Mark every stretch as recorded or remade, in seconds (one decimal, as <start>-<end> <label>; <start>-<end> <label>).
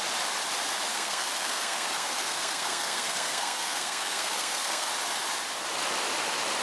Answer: 0.0-0.9 recorded; 0.9-4.9 remade; 4.9-6.6 recorded